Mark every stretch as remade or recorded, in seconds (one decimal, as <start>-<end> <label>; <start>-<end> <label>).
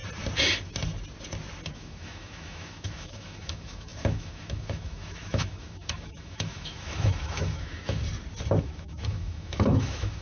0.0-1.7 recorded; 1.7-8.0 remade; 8.0-8.6 recorded; 8.6-10.2 remade